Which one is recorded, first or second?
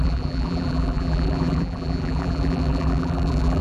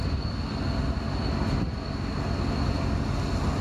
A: second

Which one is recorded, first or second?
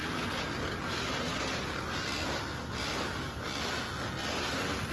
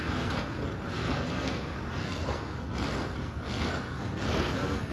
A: first